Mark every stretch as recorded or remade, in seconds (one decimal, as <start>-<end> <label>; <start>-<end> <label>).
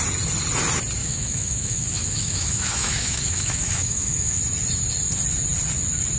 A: 0.0-1.0 recorded; 1.0-4.4 remade; 4.4-6.2 recorded